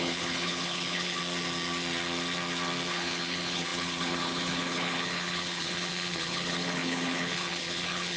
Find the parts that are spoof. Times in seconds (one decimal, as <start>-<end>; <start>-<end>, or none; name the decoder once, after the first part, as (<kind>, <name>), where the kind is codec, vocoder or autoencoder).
0.0-1.2 (codec, HILCodec); 2.9-8.2